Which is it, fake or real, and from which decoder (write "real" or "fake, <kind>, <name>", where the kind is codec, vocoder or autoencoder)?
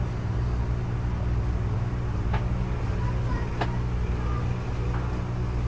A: real